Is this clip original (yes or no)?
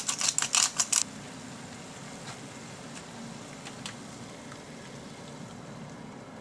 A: yes